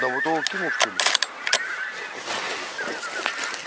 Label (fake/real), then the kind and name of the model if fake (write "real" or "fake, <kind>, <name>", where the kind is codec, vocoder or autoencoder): real